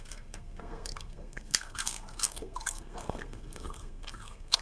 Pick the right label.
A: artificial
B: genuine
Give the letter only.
A